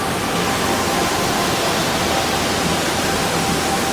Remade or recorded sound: recorded